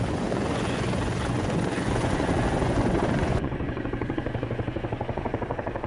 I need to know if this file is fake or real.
fake